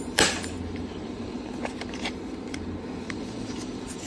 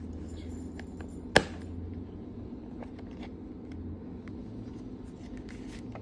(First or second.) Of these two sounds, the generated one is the first